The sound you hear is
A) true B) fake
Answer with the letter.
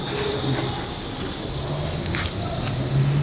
A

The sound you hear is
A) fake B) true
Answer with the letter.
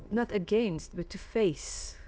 A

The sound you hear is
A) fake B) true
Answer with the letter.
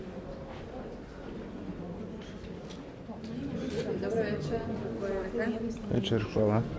B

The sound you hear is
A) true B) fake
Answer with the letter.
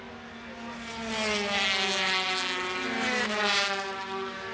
A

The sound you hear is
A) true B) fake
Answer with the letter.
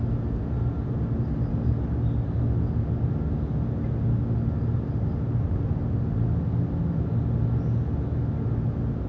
A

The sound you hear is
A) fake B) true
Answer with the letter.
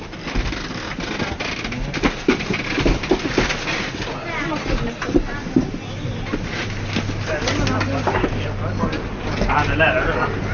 B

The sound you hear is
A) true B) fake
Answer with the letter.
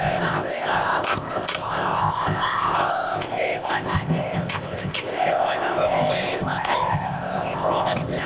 B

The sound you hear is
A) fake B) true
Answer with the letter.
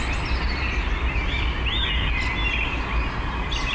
B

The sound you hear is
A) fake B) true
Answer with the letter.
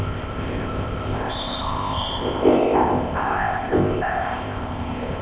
A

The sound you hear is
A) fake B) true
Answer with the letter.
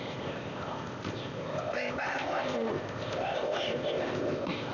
A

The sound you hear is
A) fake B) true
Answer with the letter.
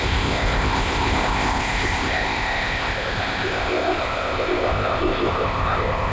A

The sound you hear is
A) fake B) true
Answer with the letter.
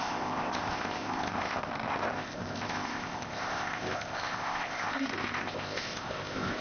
A